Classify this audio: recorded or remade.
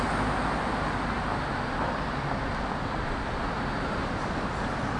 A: recorded